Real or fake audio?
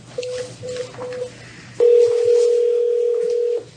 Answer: real